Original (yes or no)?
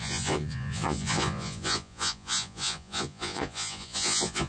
no